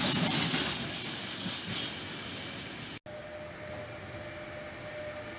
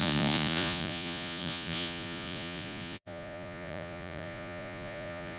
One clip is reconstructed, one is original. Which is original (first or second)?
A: first